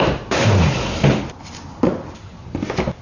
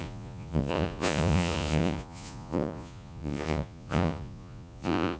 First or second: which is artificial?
second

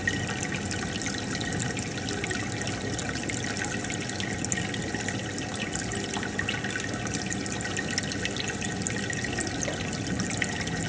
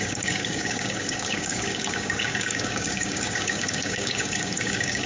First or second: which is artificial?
second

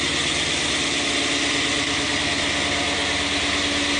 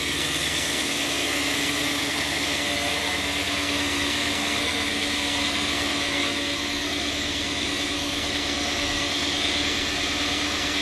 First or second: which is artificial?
second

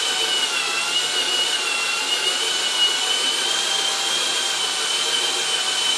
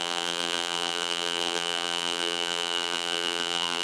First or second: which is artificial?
second